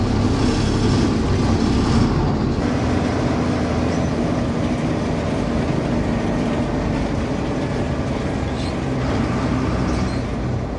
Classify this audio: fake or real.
real